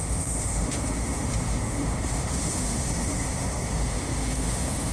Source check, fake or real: fake